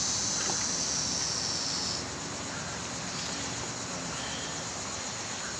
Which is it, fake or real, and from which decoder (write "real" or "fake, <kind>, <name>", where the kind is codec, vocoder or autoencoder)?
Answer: real